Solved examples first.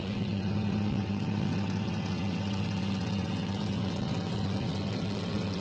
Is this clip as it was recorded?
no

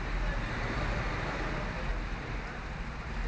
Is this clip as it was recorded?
yes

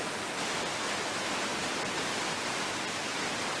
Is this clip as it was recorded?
yes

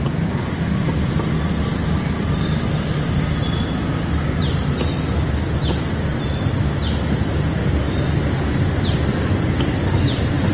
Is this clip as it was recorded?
yes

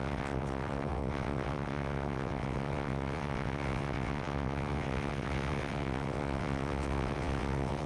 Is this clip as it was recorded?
no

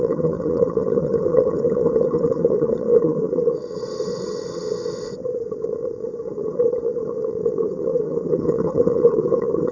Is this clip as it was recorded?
no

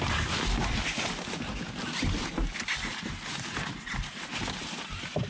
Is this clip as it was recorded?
yes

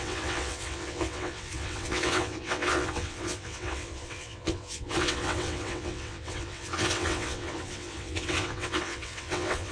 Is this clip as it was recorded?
no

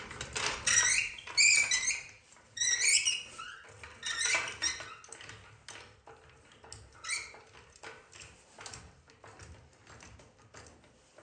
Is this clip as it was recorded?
yes